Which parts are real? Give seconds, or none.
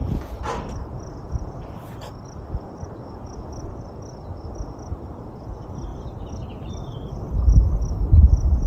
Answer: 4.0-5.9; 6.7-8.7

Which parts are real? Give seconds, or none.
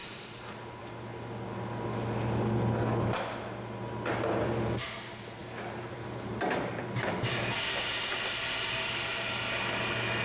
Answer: 0.8-5.4; 7.8-10.2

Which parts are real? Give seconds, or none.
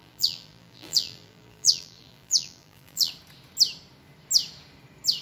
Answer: 3.1-5.2